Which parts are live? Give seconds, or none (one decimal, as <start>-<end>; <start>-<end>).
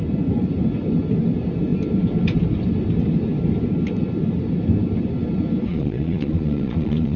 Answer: 0.0-5.7